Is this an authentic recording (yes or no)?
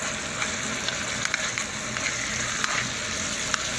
yes